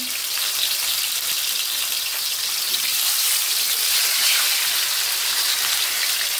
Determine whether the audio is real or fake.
real